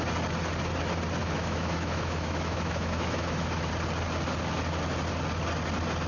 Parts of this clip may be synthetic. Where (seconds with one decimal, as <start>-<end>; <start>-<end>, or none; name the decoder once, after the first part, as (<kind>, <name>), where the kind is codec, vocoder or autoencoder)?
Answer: 1.2-3.7 (autoencoder, DAC-VAE)